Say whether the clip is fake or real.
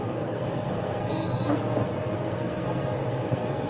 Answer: fake